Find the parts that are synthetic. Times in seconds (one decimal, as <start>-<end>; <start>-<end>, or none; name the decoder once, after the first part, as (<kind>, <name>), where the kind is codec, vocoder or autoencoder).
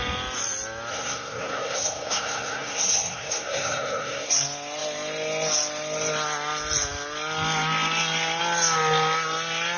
0.9-4.3 (codec, SNAC)